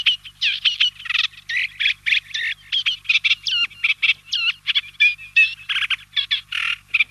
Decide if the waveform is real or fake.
real